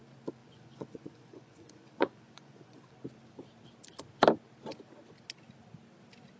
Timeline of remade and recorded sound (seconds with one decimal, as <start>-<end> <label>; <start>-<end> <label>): 0.0-0.4 recorded; 0.4-2.9 remade; 2.9-6.4 recorded